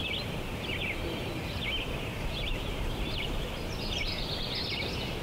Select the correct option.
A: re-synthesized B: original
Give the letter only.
B